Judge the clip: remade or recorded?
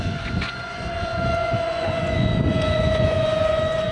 remade